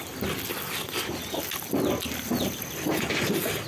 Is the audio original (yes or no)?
yes